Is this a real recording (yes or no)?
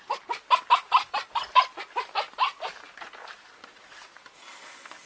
yes